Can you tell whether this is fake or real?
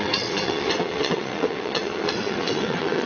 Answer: fake